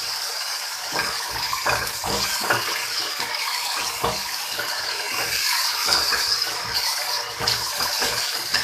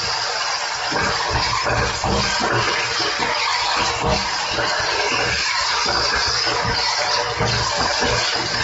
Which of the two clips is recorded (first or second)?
second